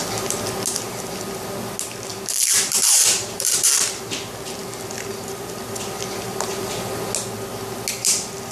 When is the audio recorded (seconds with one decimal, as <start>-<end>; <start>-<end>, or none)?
0.0-2.1; 3.7-8.5